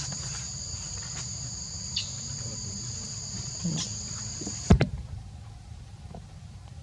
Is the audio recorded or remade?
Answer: remade